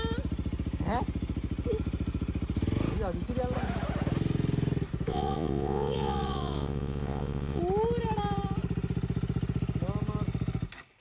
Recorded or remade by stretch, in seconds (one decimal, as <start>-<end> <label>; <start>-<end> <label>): 0.0-5.1 recorded; 5.1-7.6 remade; 7.6-11.0 recorded